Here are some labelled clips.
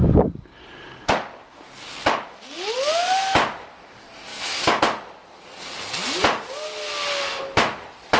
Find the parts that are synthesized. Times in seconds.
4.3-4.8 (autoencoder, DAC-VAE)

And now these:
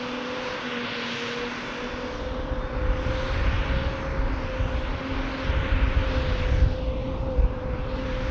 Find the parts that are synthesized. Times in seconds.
7.0-8.3 (vocoder, BigVGAN v2)

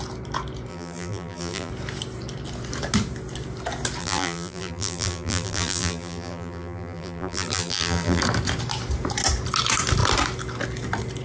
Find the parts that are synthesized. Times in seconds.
0.7-1.7 (vocoder, BigVGAN v2); 4.0-8.2

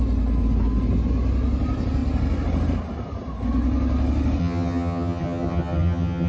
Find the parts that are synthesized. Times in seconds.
4.4-6.3 (vocoder, HiFi-GAN)

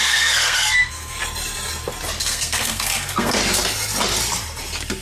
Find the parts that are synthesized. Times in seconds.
0.0-1.2 (codec, SNAC); 2.2-3.4

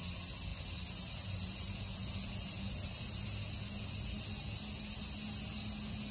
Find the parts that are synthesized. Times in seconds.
none

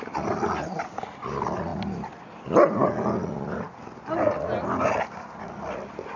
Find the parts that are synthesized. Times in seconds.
none

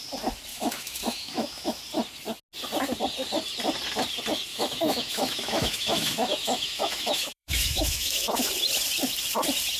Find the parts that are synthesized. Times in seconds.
0.5-1.8 (autoencoder, DAC-VAE); 4.5-8.5